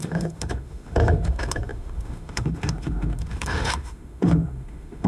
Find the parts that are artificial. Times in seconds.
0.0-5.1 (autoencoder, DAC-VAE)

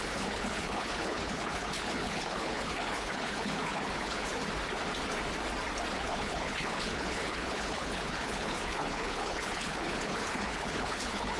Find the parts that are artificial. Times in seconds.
0.0-4.3 (codec, HILCodec); 6.0-11.4

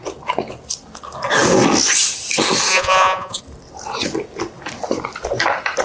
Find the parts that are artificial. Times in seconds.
2.7-3.4 (vocoder, Vocos)

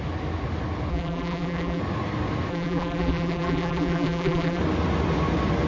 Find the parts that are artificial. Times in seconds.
0.9-1.8 (vocoder, BigVGAN v2); 2.5-4.6

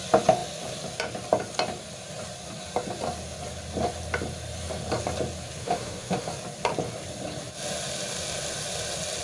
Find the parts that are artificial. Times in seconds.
5.6-6.3 (autoencoder, DAC-VAE)

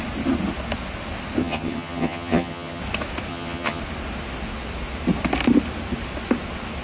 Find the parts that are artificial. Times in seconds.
1.4-2.8 (vocoder, HiFi-GAN); 3.3-3.8